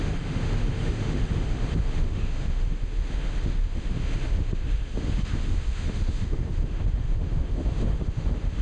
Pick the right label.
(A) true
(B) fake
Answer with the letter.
B